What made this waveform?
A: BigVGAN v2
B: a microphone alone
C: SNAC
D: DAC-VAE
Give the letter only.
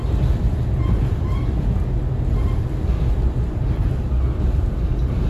B